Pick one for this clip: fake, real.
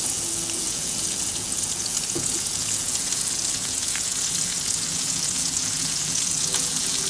fake